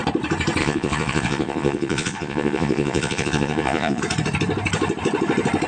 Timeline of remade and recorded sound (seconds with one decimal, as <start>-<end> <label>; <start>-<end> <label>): 0.0-0.6 recorded; 0.6-4.0 remade; 4.0-5.7 recorded